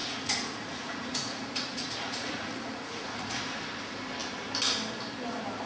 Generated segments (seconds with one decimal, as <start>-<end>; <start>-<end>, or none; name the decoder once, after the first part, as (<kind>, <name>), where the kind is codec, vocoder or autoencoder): 0.0-3.4 (vocoder, Vocos)